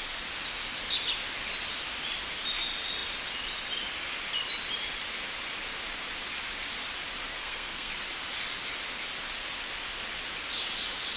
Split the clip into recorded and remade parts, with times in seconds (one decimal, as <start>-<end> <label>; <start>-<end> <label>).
0.0-7.3 recorded; 7.3-7.9 remade; 7.9-11.2 recorded